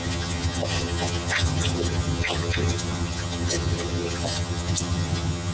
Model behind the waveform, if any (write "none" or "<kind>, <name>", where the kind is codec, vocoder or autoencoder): vocoder, HiFi-GAN